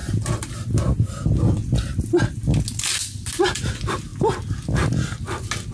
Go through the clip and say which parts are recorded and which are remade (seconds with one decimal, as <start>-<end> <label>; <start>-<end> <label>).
0.0-5.7 recorded